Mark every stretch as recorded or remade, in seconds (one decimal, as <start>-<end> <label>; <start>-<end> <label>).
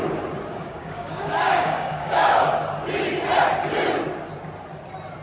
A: 0.0-0.5 recorded; 0.5-2.5 remade; 2.5-5.2 recorded